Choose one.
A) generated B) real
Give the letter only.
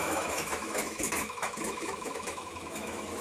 A